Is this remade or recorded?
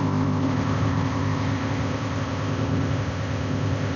remade